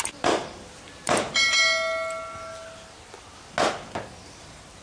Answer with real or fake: real